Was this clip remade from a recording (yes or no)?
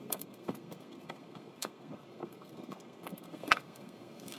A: yes